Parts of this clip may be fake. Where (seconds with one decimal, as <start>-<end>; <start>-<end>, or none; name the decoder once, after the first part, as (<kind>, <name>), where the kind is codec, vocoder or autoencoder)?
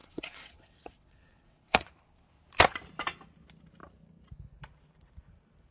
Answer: 0.0-1.9 (vocoder, WaveNeXt)